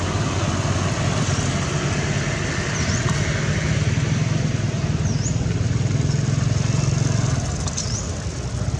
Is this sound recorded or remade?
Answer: recorded